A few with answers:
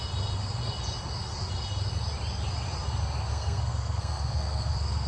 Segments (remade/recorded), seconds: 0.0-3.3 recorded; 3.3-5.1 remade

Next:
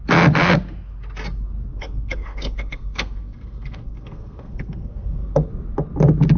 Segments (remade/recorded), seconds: 0.0-1.7 recorded; 1.7-5.5 remade; 5.5-6.4 recorded

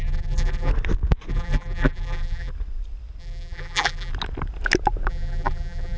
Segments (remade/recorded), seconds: 0.0-0.7 remade; 0.7-1.3 recorded; 1.3-2.5 remade; 2.5-3.2 recorded; 3.2-4.1 remade; 4.1-5.1 recorded; 5.1-6.0 remade